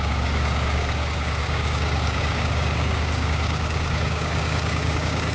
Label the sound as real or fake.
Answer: fake